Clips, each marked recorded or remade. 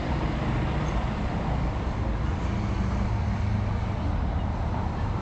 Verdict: recorded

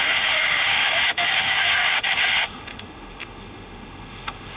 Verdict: remade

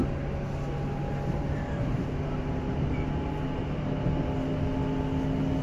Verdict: recorded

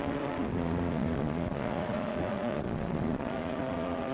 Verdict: remade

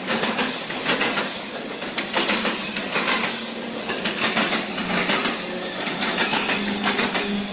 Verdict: remade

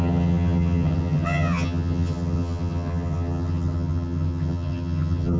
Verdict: remade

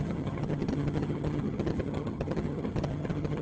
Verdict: remade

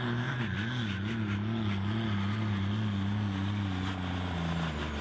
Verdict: recorded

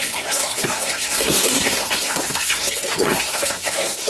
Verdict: remade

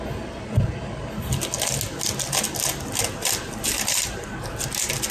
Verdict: recorded